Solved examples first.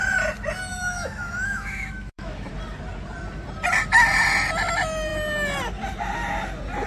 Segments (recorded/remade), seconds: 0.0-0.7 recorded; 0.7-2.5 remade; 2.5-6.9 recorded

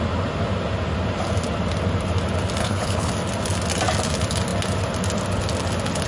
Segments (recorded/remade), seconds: 0.0-2.6 recorded; 2.6-3.1 remade; 3.1-6.1 recorded

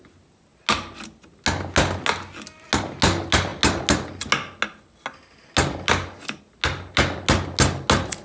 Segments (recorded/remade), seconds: 0.0-8.2 recorded

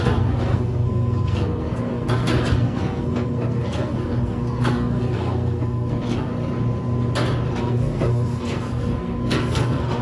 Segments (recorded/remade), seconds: 0.0-6.3 remade; 6.3-7.6 recorded; 7.6-10.0 remade

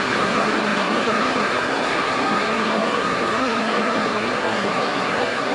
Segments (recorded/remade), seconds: 0.0-5.5 remade

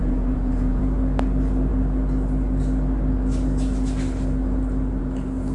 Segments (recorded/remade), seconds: 0.0-0.8 remade; 0.8-5.5 recorded